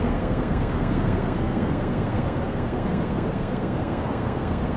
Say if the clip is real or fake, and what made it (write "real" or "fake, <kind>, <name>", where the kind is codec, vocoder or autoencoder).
fake, codec, SNAC